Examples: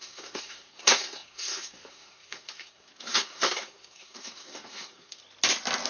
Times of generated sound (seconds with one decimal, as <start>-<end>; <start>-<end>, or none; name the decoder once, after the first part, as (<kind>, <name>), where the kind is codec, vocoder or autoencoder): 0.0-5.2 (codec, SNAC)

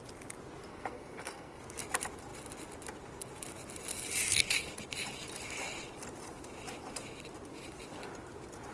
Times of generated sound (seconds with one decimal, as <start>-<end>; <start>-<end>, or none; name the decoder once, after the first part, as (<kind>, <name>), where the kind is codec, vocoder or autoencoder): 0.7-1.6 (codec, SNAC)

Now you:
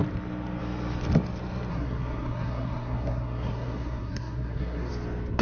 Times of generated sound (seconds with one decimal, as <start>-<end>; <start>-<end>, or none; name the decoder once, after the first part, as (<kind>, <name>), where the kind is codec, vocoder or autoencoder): 1.7-4.9 (codec, SNAC)

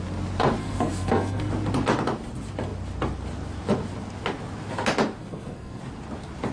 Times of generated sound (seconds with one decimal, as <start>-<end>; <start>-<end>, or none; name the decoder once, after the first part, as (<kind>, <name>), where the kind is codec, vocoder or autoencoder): 0.6-1.5 (codec, SNAC); 5.2-5.8